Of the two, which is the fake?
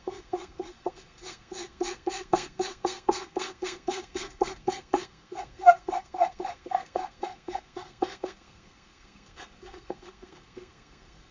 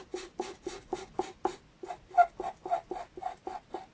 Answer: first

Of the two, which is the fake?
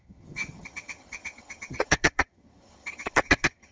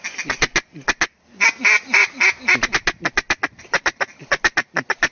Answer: first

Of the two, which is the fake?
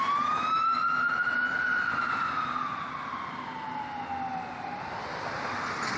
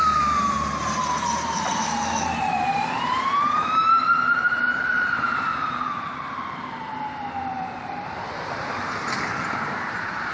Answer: second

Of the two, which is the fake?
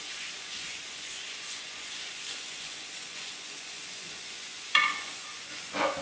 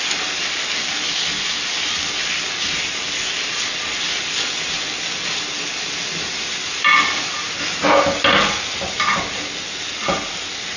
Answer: first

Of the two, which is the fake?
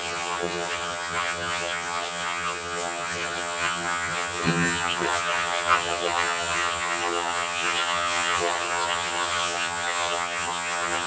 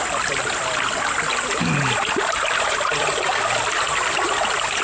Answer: first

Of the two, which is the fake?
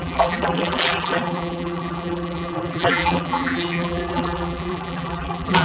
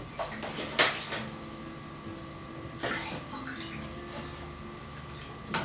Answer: first